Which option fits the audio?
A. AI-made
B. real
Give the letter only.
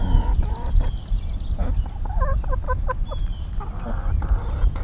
B